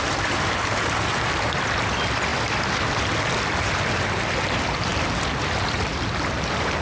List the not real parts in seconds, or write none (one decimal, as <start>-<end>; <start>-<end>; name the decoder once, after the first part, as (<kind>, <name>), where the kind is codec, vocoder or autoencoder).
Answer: 0.0-2.3 (vocoder, BigVGAN v2); 3.6-4.9; 5.4-6.8